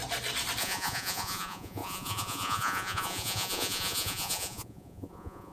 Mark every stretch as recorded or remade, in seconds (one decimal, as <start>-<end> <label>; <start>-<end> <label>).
0.0-0.6 recorded; 0.6-5.5 remade